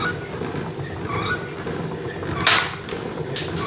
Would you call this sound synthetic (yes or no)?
no